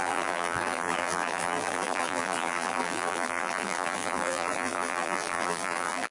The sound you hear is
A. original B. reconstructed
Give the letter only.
B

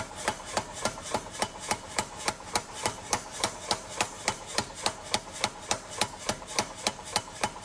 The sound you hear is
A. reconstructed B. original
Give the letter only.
A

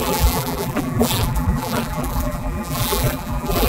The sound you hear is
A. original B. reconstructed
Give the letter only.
B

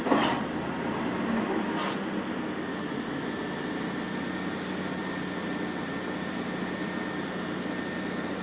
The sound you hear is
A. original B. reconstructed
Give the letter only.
A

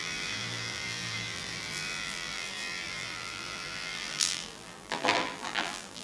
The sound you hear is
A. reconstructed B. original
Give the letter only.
A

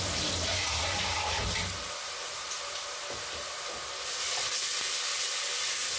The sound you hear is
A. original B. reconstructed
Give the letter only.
A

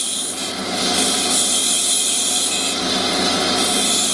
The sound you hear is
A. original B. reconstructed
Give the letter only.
B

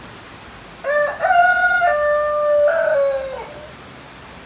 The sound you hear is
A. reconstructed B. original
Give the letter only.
B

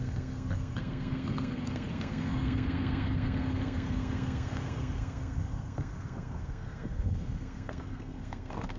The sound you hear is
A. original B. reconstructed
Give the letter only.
B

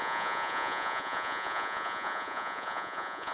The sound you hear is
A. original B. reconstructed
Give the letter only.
B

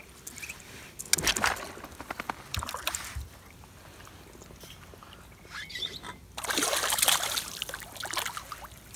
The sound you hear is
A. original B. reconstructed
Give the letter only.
A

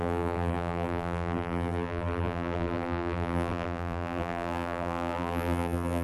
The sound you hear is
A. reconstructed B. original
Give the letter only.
A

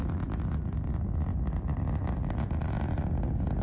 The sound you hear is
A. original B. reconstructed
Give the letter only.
B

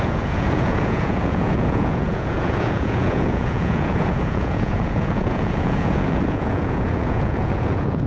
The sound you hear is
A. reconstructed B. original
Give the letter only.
A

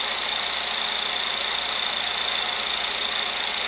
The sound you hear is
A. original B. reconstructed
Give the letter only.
A